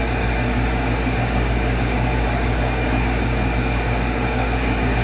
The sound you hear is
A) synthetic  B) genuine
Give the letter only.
A